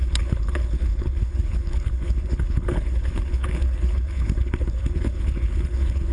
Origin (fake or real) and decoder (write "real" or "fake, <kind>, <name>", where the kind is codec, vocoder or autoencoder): fake, codec, HILCodec